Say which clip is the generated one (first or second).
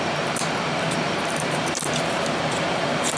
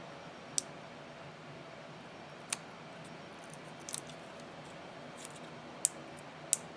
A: first